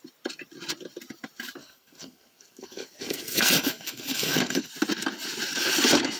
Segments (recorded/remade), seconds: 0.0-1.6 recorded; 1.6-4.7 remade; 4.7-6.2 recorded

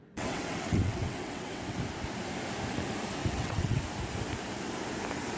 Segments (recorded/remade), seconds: 0.0-1.8 remade; 1.8-3.2 recorded; 3.2-3.8 remade; 3.8-5.4 recorded